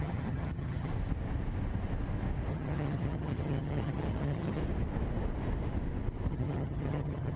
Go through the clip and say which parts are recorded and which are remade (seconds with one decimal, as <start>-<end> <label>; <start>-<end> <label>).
0.0-0.9 remade; 0.9-2.5 recorded; 2.5-4.6 remade; 4.6-6.3 recorded; 6.3-7.4 remade